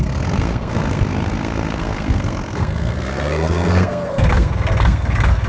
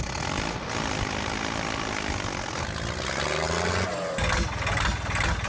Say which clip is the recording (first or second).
second